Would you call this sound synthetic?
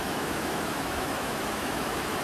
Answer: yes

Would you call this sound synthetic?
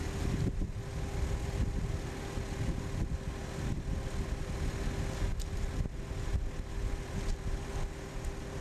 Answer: no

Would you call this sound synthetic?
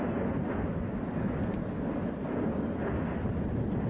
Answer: no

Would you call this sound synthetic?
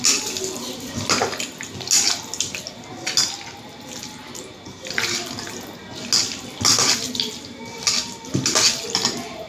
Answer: no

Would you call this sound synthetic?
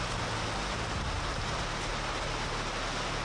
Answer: no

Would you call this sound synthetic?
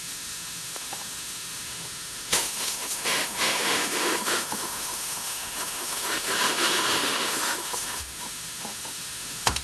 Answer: yes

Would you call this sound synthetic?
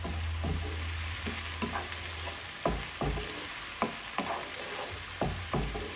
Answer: no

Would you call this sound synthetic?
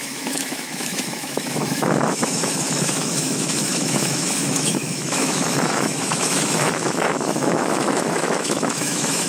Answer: yes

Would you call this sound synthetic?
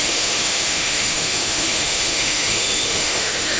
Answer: yes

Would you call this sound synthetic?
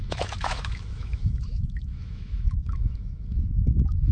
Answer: yes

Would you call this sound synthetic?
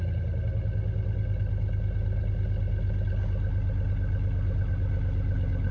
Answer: no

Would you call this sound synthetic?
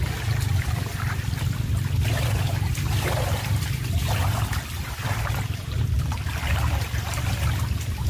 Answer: no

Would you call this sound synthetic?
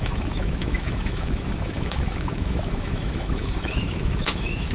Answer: yes